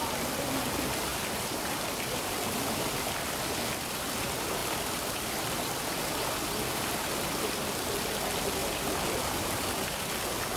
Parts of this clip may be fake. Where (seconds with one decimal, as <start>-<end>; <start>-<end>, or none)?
1.1-2.9; 4.6-5.8; 8.6-10.0